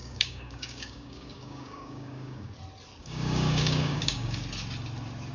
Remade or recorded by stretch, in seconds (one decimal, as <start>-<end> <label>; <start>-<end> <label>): 0.0-2.5 remade; 2.5-3.0 recorded; 3.0-4.4 remade; 4.4-5.3 recorded